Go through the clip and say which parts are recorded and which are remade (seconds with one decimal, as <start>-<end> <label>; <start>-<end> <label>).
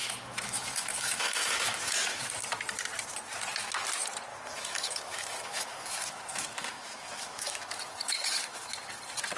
0.0-2.3 remade; 2.3-4.3 recorded; 4.3-8.7 remade; 8.7-9.4 recorded